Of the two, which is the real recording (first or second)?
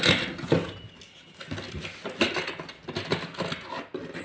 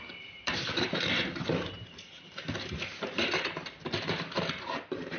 first